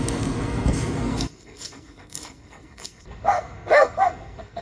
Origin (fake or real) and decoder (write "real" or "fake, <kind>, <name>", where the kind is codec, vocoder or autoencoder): fake, codec, SNAC